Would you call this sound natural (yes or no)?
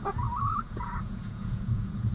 no